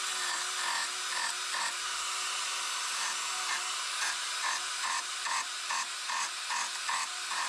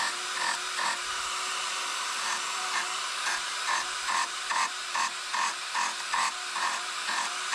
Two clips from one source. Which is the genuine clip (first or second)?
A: first